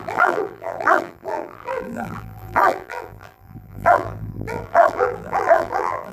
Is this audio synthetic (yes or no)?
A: yes